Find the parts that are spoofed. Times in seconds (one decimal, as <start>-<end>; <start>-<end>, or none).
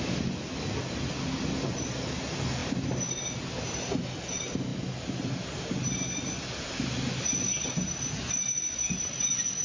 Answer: none